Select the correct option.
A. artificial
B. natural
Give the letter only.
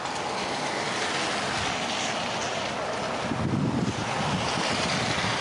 B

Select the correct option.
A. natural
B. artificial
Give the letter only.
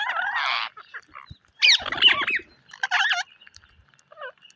A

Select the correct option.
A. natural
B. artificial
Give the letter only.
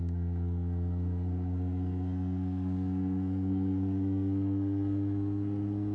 B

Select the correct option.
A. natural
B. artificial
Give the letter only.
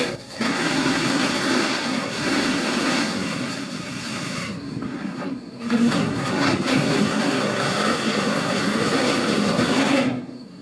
B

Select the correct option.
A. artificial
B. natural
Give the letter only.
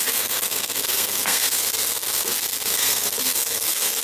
A